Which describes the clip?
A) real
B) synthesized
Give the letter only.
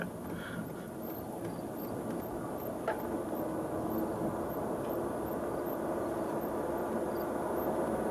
A